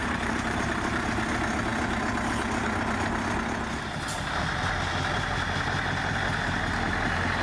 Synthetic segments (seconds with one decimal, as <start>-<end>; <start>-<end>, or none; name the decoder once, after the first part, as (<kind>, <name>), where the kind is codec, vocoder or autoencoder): 0.0-1.2 (vocoder, BigVGAN v2)